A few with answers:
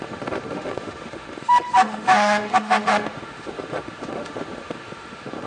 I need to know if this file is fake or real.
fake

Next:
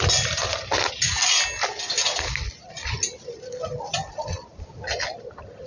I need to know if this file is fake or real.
real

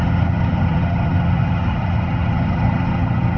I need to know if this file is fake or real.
fake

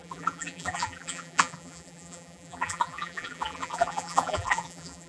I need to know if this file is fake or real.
fake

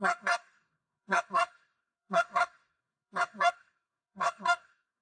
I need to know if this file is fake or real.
fake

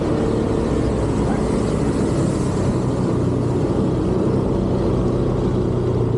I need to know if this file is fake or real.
real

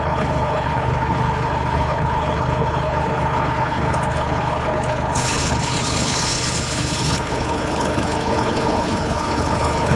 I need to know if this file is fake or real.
fake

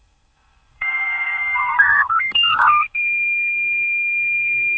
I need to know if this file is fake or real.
fake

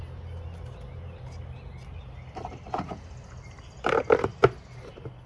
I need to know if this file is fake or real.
real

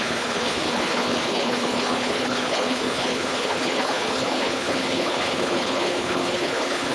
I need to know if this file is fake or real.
fake